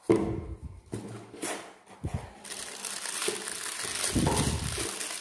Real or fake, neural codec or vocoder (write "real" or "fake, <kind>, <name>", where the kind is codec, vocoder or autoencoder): real